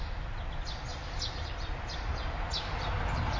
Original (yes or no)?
yes